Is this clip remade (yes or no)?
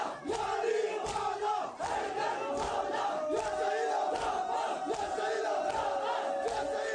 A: no